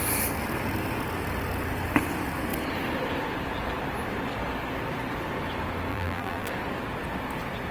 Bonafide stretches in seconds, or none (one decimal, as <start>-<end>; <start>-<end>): 0.0-5.9; 6.5-7.7